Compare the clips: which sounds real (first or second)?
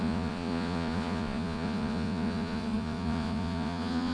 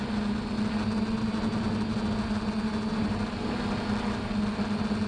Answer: second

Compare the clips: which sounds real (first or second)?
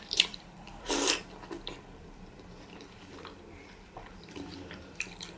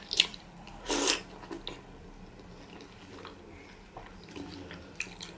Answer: second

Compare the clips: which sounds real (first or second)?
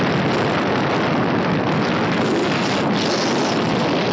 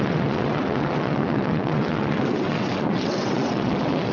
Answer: first